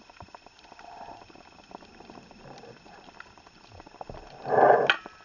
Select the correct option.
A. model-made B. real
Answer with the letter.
B